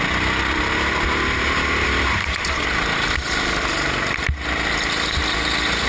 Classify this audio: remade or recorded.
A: recorded